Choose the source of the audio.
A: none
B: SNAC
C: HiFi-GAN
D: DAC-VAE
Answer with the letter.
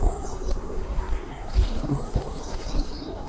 B